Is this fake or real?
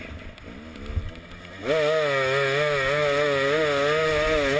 real